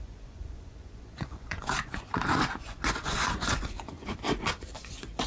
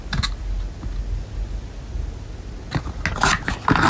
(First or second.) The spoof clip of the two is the first